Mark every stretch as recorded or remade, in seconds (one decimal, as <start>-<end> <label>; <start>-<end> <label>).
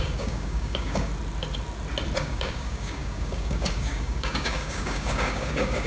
0.0-1.1 remade; 1.1-2.2 recorded; 2.2-5.9 remade